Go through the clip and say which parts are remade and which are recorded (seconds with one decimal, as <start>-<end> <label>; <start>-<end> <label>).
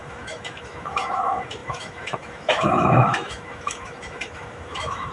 0.0-5.1 remade